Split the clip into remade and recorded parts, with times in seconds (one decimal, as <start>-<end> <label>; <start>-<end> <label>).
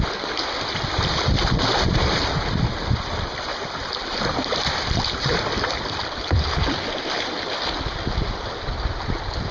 0.0-9.5 recorded